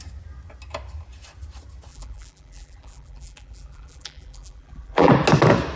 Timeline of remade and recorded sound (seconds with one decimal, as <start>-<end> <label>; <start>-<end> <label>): 0.0-1.9 recorded; 1.9-5.1 remade; 5.1-5.8 recorded